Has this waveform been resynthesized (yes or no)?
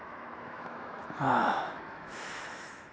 yes